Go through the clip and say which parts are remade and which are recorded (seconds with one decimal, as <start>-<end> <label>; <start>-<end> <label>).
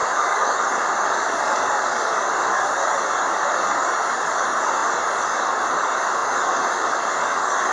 0.0-7.7 remade